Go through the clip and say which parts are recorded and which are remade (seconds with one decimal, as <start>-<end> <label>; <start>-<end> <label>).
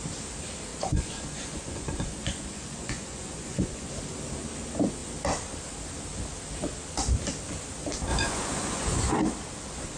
0.0-0.7 recorded; 0.7-3.9 remade; 3.9-8.1 recorded; 8.1-9.2 remade; 9.2-10.0 recorded